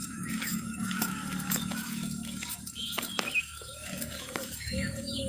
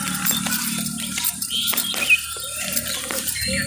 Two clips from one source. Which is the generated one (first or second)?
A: first